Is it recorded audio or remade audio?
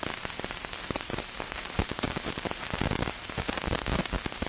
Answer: remade